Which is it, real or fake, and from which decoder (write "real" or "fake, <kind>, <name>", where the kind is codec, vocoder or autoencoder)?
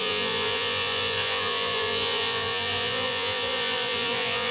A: fake, vocoder, Vocos